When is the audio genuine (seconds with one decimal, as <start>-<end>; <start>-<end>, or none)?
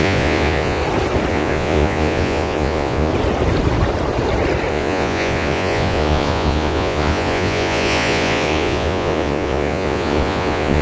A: 0.8-1.3; 3.1-4.7